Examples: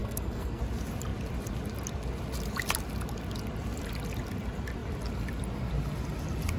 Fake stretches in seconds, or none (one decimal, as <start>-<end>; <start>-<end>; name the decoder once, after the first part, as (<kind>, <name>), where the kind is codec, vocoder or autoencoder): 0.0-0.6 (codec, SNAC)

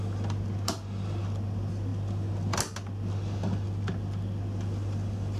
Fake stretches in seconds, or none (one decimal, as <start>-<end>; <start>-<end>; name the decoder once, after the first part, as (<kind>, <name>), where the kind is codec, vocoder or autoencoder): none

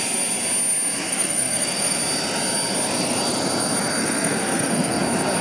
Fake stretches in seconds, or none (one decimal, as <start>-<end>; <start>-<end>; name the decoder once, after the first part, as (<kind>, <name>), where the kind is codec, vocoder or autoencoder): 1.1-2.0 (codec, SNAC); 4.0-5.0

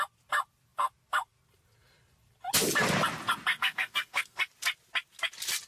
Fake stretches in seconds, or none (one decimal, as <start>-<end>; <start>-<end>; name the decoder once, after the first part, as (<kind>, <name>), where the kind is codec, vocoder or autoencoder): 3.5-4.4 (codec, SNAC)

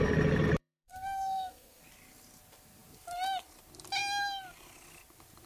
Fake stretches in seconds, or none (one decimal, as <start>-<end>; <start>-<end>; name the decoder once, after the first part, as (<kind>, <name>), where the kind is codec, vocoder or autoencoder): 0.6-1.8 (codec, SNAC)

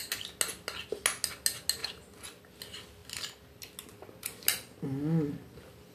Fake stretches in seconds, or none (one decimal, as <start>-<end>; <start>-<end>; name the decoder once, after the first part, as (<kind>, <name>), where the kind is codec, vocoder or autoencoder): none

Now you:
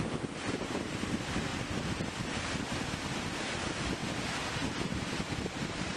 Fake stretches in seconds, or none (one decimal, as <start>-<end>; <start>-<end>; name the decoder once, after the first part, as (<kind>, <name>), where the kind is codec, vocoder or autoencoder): none

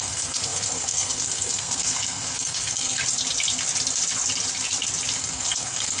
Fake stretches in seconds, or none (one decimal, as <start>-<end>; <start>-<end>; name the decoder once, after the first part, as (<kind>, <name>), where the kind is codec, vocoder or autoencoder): 0.0-3.0 (codec, SNAC); 5.2-6.0